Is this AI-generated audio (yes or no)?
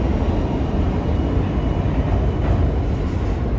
no